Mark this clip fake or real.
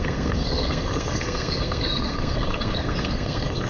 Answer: fake